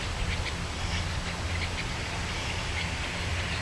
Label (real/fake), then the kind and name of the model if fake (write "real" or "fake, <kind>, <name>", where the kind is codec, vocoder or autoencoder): real